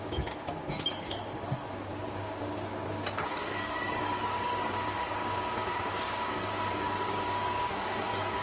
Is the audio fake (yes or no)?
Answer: yes